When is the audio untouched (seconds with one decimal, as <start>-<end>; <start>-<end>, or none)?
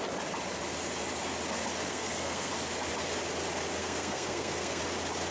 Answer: 0.0-1.9; 2.5-3.8; 4.8-5.3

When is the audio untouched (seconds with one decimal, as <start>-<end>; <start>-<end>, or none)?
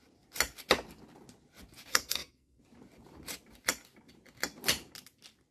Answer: 0.0-1.9; 2.6-5.5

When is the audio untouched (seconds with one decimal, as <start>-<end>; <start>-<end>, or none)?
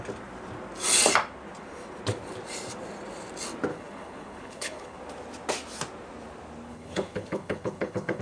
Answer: 0.0-3.7; 5.0-6.7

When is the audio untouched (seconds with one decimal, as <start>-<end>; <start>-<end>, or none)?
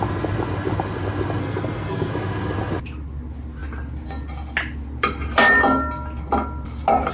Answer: 0.0-1.4; 2.1-7.1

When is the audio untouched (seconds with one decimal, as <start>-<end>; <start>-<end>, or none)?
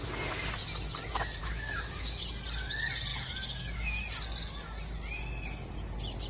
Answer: 0.0-1.4; 2.2-3.1; 4.0-6.3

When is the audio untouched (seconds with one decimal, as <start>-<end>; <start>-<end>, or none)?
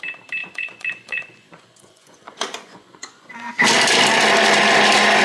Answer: 0.0-0.4; 3.5-5.2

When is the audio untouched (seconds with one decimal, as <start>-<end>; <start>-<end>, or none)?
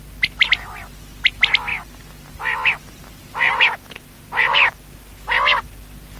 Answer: 0.0-3.2